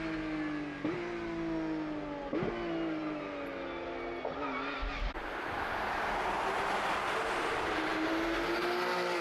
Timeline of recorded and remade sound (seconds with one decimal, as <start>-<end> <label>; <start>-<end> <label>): 0.0-9.2 recorded